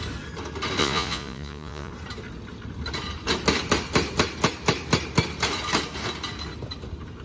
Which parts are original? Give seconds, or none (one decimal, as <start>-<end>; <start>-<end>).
0.0-0.8; 1.9-7.2